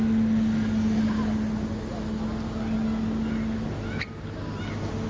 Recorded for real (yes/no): yes